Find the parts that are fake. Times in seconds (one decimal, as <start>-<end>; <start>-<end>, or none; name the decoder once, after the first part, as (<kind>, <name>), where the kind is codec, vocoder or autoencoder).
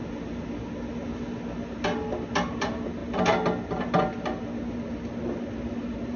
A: none